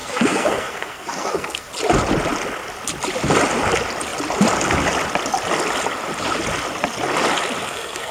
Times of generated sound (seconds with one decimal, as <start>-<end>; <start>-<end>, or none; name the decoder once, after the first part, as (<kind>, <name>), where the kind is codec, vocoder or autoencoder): 0.0-1.7 (codec, SNAC); 7.6-8.1

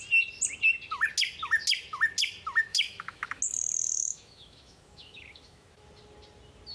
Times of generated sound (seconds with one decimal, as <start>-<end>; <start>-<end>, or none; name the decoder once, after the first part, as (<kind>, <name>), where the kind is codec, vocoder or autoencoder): 2.7-3.4 (autoencoder, DAC-VAE); 4.0-5.8